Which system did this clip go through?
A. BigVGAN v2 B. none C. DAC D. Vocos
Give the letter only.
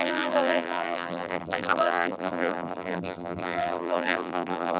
A